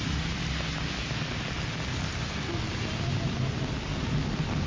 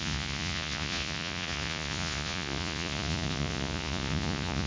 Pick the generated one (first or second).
second